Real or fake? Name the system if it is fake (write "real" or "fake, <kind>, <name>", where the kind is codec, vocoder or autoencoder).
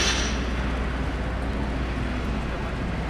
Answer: real